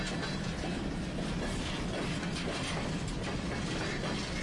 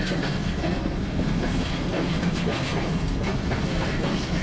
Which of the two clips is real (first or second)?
first